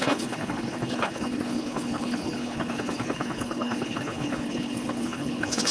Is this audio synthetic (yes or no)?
yes